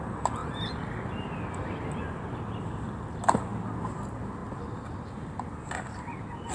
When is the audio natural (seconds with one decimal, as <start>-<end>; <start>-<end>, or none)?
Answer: 0.0-6.5